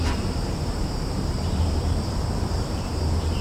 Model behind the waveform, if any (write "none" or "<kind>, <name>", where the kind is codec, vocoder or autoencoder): vocoder, BigVGAN v2